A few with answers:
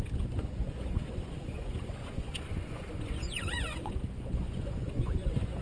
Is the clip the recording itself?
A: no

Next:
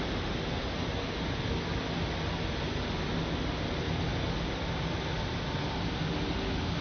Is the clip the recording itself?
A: yes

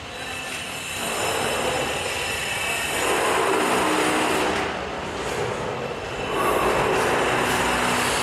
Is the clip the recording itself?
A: yes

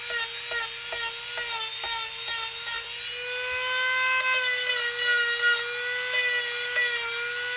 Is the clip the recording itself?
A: yes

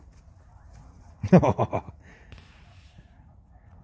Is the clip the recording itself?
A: no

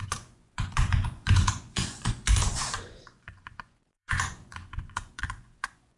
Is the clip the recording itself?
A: no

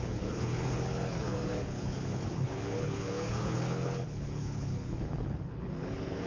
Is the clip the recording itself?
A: no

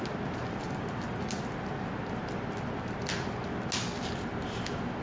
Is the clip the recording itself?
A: yes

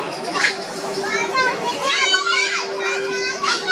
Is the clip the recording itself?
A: no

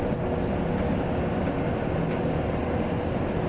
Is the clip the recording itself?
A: yes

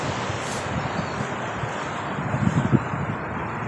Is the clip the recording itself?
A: yes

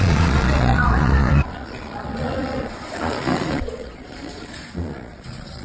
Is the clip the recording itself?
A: no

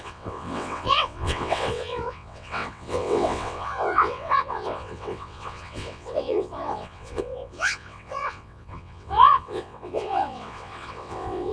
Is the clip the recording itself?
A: no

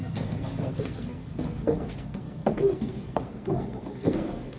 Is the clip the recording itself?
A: no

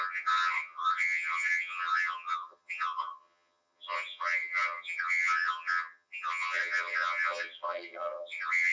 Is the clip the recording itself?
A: no